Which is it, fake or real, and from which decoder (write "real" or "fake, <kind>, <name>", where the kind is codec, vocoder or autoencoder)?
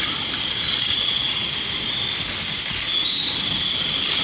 real